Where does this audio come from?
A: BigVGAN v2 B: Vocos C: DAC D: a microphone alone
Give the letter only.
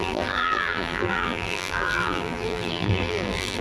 A